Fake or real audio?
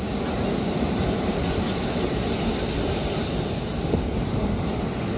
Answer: real